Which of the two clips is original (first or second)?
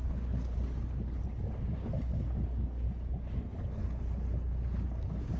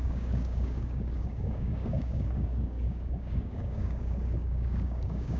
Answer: first